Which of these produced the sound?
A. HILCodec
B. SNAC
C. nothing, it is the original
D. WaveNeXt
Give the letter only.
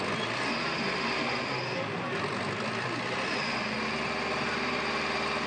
C